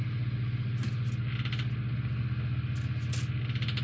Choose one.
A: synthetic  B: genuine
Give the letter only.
B